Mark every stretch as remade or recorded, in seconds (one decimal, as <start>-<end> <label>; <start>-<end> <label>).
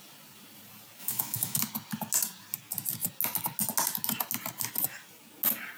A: 0.0-1.0 recorded; 1.0-1.6 remade; 1.6-5.8 recorded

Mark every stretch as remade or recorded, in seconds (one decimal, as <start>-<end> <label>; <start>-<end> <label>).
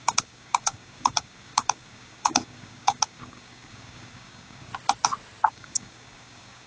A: 0.0-4.7 remade; 4.7-5.5 recorded; 5.5-6.7 remade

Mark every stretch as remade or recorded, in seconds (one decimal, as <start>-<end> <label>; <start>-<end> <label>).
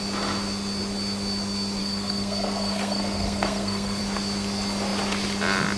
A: 0.0-1.8 recorded; 1.8-4.0 remade; 4.0-5.8 recorded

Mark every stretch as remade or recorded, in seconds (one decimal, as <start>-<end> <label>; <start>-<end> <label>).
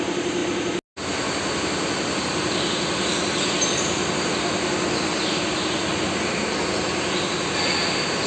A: 0.0-8.3 recorded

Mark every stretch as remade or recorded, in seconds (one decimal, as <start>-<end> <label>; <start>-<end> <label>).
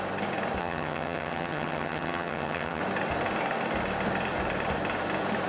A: 0.0-0.6 recorded; 0.6-2.8 remade; 2.8-5.5 recorded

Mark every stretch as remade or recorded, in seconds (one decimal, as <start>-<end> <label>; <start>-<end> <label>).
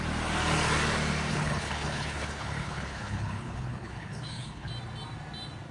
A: 0.0-1.3 recorded; 1.3-4.7 remade; 4.7-5.7 recorded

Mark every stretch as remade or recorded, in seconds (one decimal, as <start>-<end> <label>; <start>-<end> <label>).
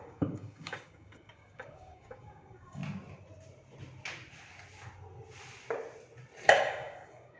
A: 0.0-2.8 remade; 2.8-6.5 recorded; 6.5-7.4 remade